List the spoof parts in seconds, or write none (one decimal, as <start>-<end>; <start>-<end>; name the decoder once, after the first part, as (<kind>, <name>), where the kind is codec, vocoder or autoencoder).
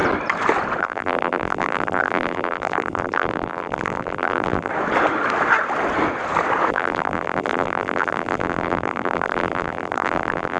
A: 0.8-4.7 (vocoder, BigVGAN v2); 6.7-10.6